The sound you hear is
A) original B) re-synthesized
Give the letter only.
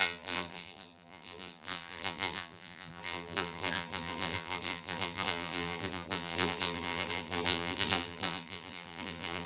B